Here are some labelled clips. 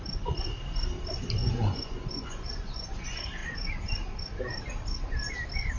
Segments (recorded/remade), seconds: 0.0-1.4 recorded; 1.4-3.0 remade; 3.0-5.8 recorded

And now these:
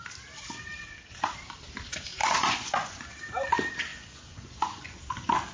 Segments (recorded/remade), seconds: 0.0-2.2 recorded; 2.2-3.0 remade; 3.0-3.9 recorded; 3.9-5.0 remade; 5.0-5.5 recorded

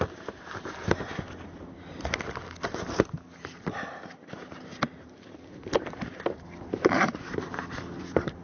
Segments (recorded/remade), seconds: 0.0-0.8 remade; 0.8-4.0 recorded; 4.0-8.4 remade